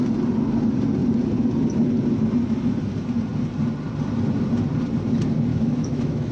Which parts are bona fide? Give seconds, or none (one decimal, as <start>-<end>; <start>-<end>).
0.0-5.5